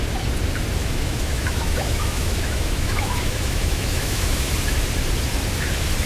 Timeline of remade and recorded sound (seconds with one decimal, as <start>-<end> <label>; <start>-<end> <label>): 0.0-0.8 recorded; 0.8-4.5 remade; 4.5-6.1 recorded